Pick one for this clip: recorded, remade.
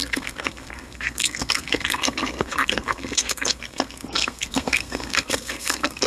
remade